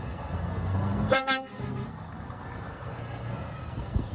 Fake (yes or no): yes